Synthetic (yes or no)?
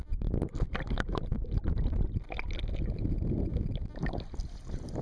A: no